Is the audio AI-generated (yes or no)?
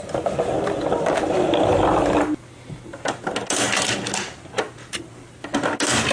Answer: no